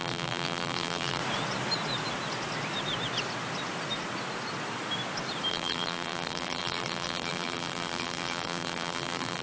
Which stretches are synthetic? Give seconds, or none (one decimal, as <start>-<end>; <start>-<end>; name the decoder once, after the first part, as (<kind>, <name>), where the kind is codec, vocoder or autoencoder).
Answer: 0.0-1.2 (vocoder, BigVGAN v2); 5.5-9.4